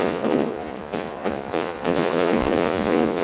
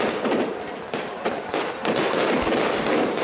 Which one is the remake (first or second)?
first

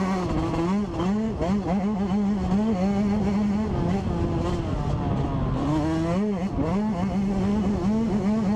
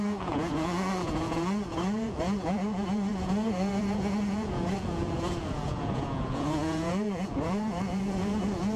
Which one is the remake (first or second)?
second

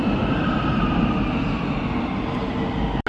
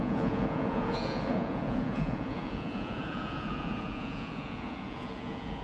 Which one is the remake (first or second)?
second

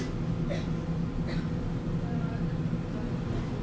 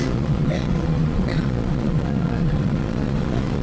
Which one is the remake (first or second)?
second